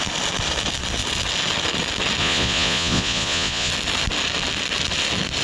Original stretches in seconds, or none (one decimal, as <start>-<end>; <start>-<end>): 0.0-2.2; 3.7-5.4